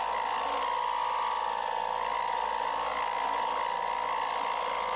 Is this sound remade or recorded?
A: recorded